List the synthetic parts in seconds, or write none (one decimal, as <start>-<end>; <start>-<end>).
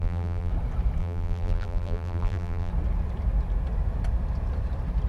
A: 0.0-0.5; 1.0-2.7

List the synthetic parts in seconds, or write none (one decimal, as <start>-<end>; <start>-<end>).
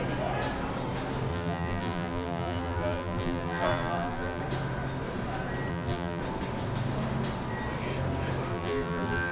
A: 1.3-4.4; 5.7-6.2; 8.5-9.3